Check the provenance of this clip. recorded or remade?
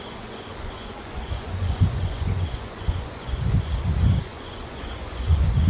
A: remade